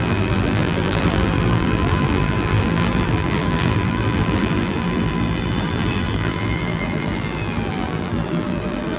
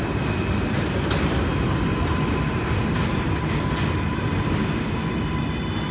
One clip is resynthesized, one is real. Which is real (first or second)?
second